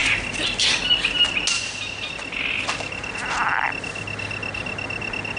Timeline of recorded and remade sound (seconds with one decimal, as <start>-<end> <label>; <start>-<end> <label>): 0.0-5.4 recorded